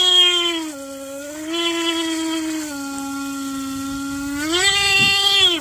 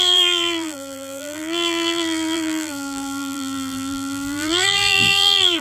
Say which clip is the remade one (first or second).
second